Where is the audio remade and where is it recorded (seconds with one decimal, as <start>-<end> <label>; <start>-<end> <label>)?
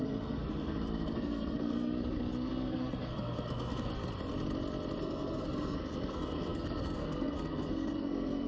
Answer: 0.0-3.9 remade; 3.9-5.0 recorded; 5.0-8.5 remade